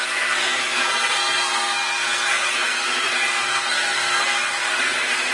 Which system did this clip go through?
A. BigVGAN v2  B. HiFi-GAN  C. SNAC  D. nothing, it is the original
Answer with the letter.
C